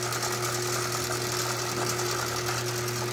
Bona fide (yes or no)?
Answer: yes